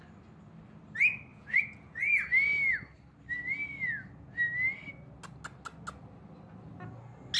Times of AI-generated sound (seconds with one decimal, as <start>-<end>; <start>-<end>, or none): 1.3-2.1